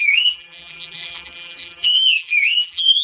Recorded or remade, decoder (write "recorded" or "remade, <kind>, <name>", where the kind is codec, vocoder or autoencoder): remade, vocoder, BigVGAN v2